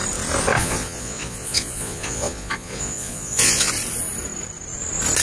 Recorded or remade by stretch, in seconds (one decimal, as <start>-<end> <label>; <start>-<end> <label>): 0.0-0.6 recorded; 0.6-3.7 remade; 3.7-5.2 recorded